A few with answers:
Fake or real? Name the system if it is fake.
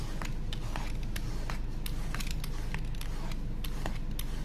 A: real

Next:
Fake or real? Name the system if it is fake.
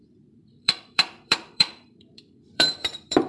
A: fake, vocoder, BigVGAN v2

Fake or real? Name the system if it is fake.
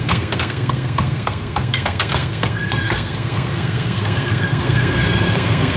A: fake, codec, SNAC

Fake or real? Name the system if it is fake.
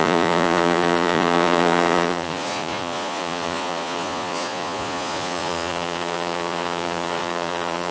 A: fake, vocoder, Vocos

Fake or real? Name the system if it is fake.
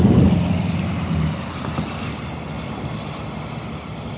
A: real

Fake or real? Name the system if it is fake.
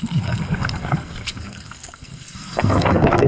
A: fake, codec, SNAC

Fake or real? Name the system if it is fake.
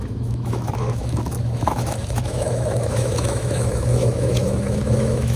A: fake, autoencoder, DAC-VAE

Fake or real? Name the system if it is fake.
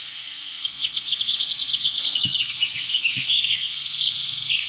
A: fake, codec, SNAC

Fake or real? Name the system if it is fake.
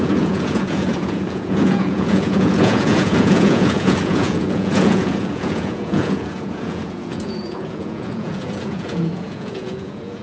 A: fake, vocoder, Vocos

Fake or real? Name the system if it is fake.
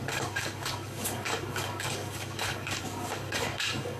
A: fake, codec, DAC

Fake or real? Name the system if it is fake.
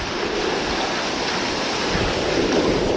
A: real